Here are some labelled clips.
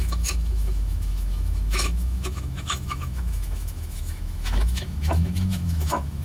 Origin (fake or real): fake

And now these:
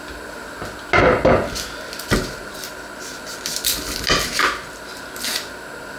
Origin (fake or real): real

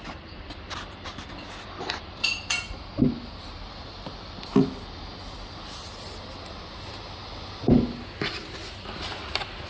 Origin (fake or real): real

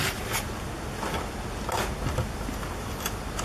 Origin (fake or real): real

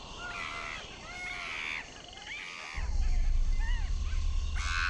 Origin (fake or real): real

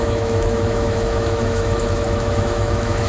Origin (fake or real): fake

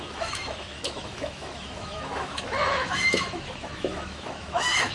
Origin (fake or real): fake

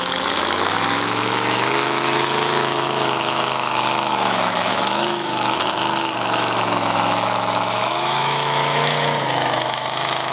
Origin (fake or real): fake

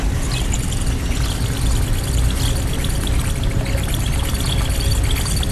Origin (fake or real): real